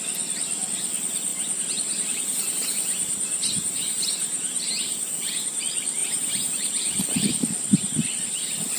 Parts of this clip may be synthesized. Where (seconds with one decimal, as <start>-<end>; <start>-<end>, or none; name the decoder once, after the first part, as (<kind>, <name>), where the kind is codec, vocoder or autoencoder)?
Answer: 1.3-5.6 (vocoder, BigVGAN v2); 6.0-7.0